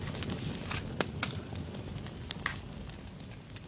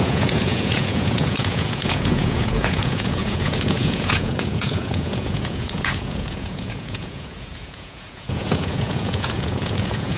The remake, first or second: second